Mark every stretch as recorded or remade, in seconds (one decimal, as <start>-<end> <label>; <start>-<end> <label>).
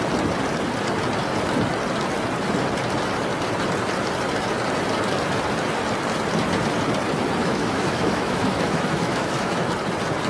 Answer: 0.0-7.4 recorded; 7.4-9.7 remade; 9.7-10.3 recorded